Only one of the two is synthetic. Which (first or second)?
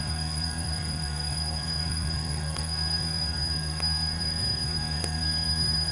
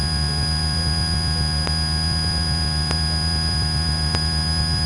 first